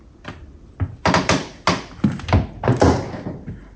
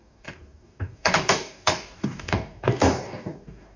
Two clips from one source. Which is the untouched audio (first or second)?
first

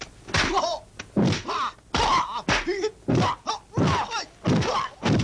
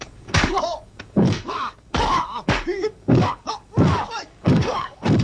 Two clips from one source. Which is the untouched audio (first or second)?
first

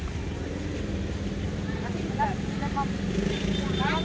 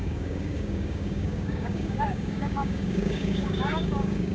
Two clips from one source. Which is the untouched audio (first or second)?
first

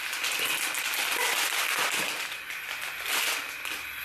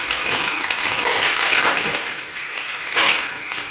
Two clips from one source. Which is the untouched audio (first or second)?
first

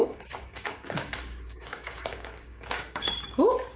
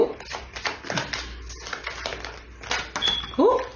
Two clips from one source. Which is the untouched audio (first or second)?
second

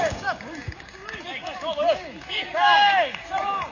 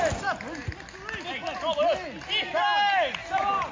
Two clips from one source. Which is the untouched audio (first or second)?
second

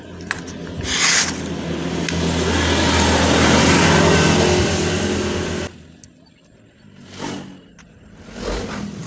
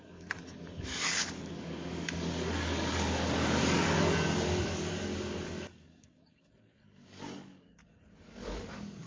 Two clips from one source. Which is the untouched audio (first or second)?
first